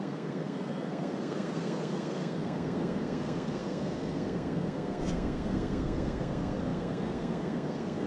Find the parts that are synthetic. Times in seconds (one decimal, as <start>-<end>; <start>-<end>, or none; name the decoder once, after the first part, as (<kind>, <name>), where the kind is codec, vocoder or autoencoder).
0.0-8.1 (codec, SNAC)